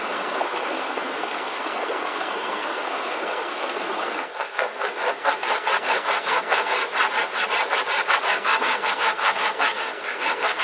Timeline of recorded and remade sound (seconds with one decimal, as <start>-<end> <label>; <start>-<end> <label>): 0.0-6.8 remade; 6.8-8.1 recorded; 8.1-10.6 remade